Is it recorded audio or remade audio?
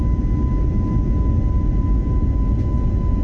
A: recorded